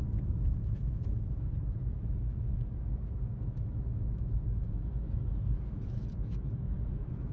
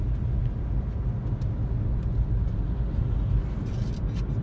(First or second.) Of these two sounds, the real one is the second